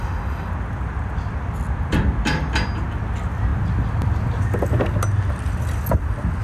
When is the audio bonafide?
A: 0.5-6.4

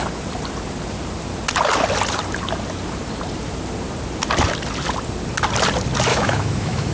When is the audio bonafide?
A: 0.0-6.1

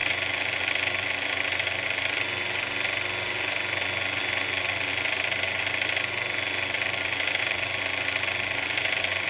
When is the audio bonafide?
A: 0.0-9.3

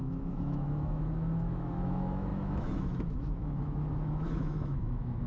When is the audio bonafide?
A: none

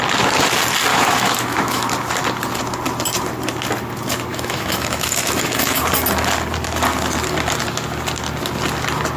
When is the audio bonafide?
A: 0.0-0.9; 1.9-4.3; 5.8-9.2

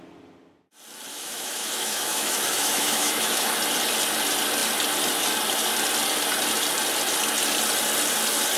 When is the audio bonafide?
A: 0.0-1.1; 3.5-8.6

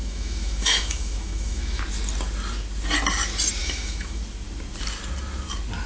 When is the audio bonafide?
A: 1.8-3.6; 4.2-5.9